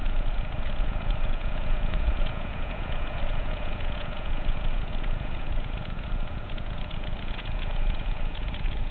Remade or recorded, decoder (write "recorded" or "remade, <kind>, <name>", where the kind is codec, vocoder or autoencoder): remade, vocoder, Vocos